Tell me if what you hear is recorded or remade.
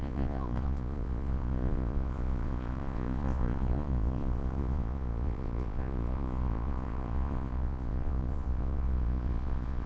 remade